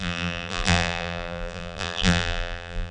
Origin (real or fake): fake